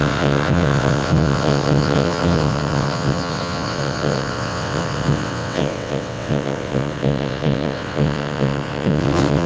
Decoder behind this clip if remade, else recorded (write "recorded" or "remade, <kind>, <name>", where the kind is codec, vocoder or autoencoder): remade, vocoder, WaveNeXt